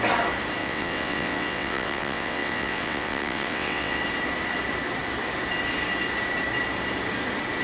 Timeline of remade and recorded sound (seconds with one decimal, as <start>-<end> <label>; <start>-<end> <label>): 0.0-0.6 recorded; 0.6-4.0 remade; 4.0-7.6 recorded